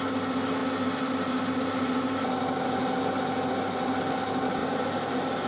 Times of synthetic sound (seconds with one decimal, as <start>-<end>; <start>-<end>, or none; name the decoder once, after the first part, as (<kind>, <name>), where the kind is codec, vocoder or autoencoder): 4.6-5.1 (vocoder, BigVGAN v2)